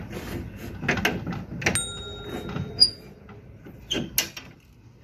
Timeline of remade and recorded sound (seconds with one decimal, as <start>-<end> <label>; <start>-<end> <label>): 0.0-5.0 recorded